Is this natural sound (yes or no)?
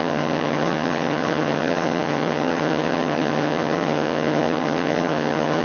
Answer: no